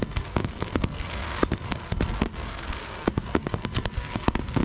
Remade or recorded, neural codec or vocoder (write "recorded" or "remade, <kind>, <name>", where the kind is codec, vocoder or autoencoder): remade, codec, SNAC